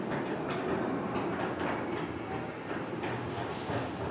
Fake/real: real